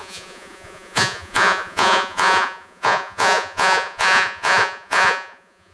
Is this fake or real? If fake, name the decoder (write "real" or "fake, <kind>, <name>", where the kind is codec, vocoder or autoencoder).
fake, vocoder, Vocos